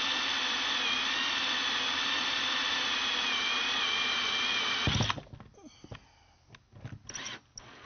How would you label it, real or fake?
real